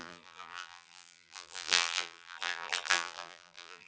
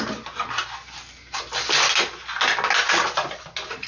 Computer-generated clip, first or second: first